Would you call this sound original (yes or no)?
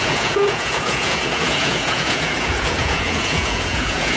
no